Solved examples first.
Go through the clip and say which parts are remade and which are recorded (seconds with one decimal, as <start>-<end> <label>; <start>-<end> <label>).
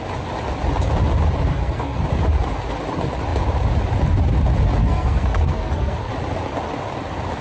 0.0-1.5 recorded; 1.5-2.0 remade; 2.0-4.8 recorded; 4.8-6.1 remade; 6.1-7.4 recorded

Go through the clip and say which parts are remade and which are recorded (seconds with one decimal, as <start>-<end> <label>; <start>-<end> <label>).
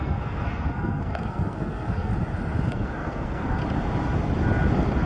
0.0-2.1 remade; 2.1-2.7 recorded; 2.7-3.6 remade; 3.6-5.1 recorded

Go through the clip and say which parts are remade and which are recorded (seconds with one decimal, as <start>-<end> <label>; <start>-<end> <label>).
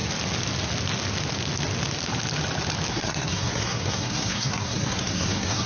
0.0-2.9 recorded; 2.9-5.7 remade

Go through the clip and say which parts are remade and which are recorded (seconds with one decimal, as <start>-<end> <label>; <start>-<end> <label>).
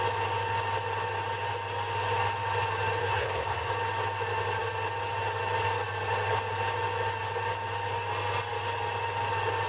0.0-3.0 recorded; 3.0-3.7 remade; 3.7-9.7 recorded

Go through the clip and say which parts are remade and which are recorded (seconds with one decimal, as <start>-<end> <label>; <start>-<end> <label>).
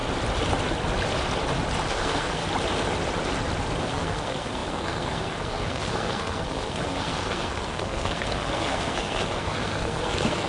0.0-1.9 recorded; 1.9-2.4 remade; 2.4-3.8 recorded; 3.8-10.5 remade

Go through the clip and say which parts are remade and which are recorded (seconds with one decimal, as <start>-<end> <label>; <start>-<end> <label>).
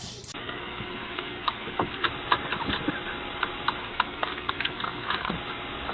0.0-0.4 recorded; 0.4-2.1 remade; 2.1-3.8 recorded; 3.8-5.3 remade; 5.3-5.9 recorded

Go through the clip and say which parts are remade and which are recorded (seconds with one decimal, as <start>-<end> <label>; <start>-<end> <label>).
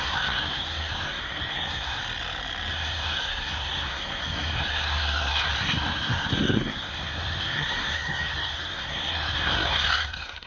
0.0-2.0 remade; 2.0-2.7 recorded; 2.7-10.5 remade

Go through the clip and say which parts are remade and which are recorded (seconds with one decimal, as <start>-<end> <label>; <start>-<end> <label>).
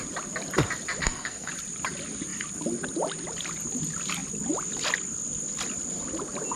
0.0-1.0 recorded; 1.0-1.5 remade; 1.5-6.6 recorded